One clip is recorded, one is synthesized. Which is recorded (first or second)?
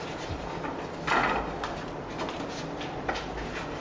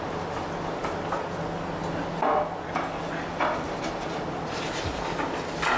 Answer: second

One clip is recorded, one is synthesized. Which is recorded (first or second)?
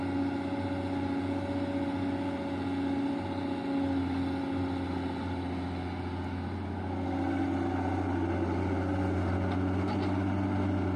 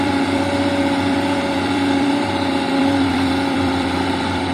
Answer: first